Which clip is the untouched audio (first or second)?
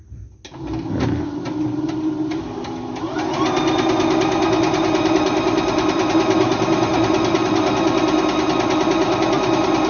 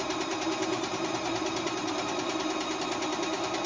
first